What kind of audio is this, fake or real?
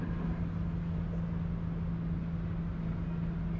real